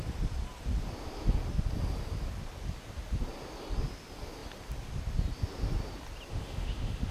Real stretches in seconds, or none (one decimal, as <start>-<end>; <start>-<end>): 0.0-6.3